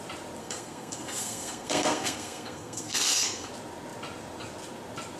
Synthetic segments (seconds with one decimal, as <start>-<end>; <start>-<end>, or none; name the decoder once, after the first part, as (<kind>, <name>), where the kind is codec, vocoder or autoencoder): 0.4-3.5 (codec, SNAC)